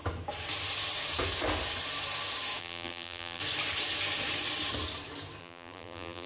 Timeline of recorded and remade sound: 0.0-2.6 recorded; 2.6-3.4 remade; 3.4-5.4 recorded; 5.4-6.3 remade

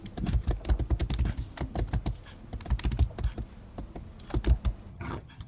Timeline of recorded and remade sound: 0.0-4.9 recorded; 4.9-5.5 remade

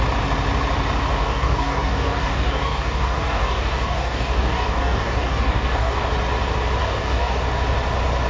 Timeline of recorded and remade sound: 0.0-1.1 recorded; 1.1-6.1 remade; 6.1-6.8 recorded; 6.8-7.4 remade; 7.4-8.3 recorded

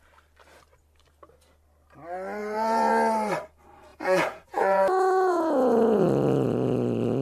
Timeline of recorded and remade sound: 0.0-2.4 recorded; 2.4-2.9 remade; 2.9-3.9 recorded; 3.9-6.0 remade; 6.0-7.2 recorded

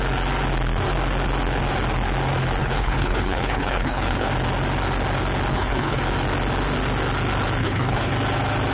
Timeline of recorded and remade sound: 0.0-2.6 recorded; 2.6-4.3 remade; 4.3-5.5 recorded; 5.5-6.0 remade; 6.0-7.6 recorded; 7.6-8.1 remade; 8.1-8.7 recorded

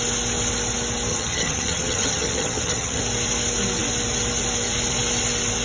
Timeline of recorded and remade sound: 0.0-1.1 recorded; 1.1-3.0 remade; 3.0-5.6 recorded